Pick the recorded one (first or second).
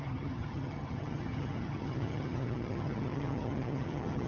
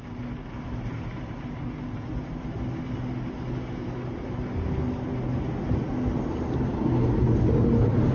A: second